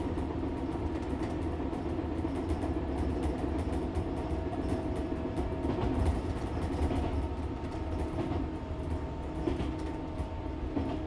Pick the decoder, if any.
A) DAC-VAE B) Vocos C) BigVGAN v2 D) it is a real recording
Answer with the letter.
D